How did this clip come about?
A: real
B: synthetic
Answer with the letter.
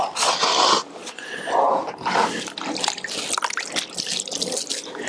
A